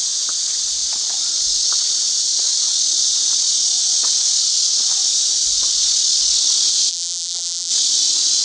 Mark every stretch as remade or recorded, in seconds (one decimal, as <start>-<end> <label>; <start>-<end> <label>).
0.0-6.9 recorded; 6.9-7.7 remade; 7.7-8.4 recorded